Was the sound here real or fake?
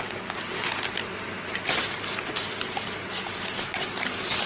real